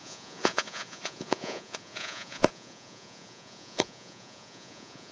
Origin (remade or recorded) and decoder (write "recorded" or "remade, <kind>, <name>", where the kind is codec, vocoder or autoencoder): remade, vocoder, Vocos